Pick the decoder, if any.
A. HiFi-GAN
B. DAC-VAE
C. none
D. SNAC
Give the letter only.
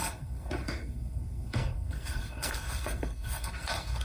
D